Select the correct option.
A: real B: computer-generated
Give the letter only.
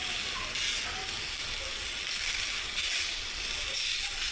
A